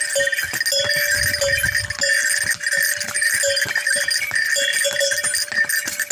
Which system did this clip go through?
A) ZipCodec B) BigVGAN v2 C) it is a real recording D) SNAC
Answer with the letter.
C